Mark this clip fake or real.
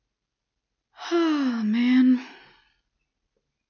real